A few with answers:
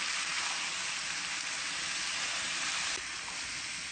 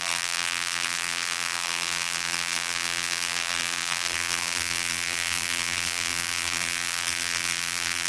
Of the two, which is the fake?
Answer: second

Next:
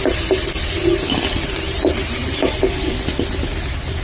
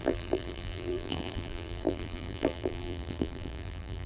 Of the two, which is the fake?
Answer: second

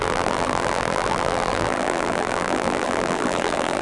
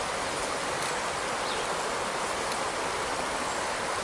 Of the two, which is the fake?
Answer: first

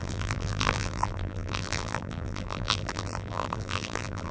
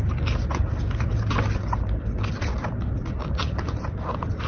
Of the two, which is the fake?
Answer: first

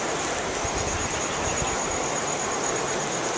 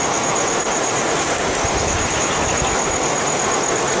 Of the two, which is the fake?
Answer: first